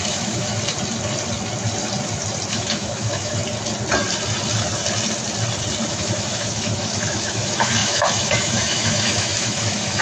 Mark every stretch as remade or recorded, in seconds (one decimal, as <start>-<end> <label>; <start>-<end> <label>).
0.0-0.5 remade; 0.5-2.5 recorded; 2.5-3.4 remade; 3.4-5.9 recorded; 5.9-10.0 remade